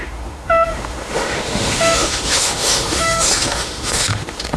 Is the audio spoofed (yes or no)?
yes